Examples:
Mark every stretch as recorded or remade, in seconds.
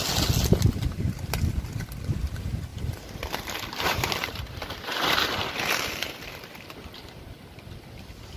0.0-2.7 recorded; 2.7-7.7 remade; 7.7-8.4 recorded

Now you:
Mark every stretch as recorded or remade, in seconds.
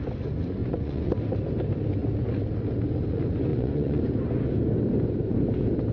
0.0-0.6 recorded; 0.6-1.1 remade; 1.1-3.5 recorded; 3.5-4.0 remade; 4.0-5.9 recorded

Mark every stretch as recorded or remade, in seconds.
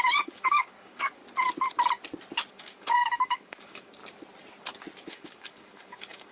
0.0-1.2 remade; 1.2-2.5 recorded; 2.5-4.0 remade; 4.0-5.1 recorded; 5.1-6.3 remade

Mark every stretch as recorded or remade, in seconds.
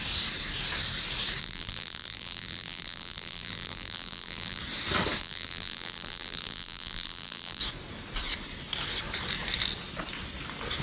0.0-1.4 recorded; 1.4-4.6 remade; 4.6-5.2 recorded; 5.2-7.6 remade; 7.6-10.8 recorded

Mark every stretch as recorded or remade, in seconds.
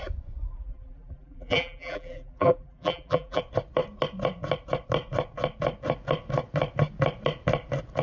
0.0-0.5 recorded; 0.5-3.4 remade; 3.4-8.0 recorded